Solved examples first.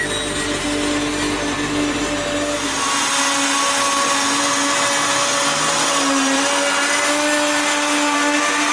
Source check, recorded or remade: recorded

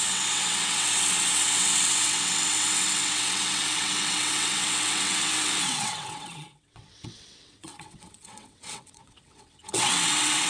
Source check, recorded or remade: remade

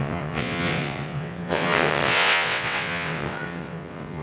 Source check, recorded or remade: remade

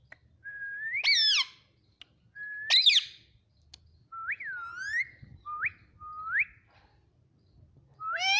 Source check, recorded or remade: recorded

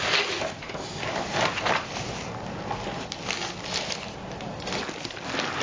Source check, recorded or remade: recorded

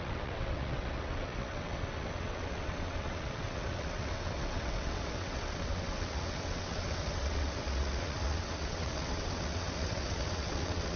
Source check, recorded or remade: remade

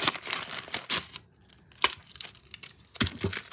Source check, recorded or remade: recorded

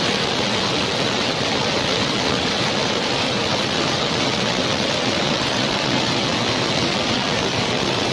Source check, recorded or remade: remade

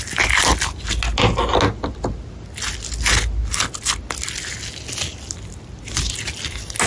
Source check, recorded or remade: recorded